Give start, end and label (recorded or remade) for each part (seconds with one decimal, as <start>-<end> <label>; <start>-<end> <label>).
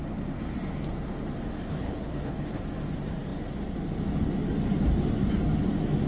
0.0-1.7 recorded; 1.7-2.6 remade; 2.6-6.1 recorded